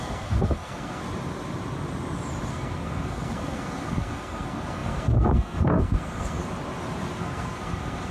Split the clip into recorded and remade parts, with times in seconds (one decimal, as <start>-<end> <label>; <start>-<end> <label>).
0.0-1.0 remade; 1.0-2.5 recorded; 2.5-6.4 remade; 6.4-7.2 recorded; 7.2-8.1 remade